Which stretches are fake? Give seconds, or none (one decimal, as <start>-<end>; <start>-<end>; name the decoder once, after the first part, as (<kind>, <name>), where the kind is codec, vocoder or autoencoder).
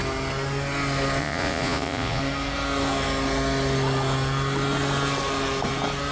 1.2-2.2 (vocoder, Vocos)